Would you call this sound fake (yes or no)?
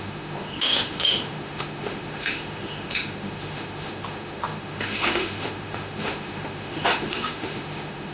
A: yes